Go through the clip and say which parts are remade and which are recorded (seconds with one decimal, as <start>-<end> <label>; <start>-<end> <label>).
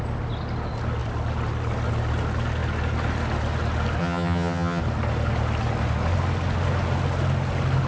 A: 0.0-4.0 recorded; 4.0-4.8 remade; 4.8-7.9 recorded